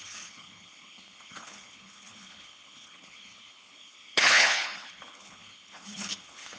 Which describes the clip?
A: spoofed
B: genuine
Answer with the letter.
A